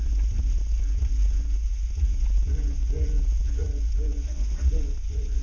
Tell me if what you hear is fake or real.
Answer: fake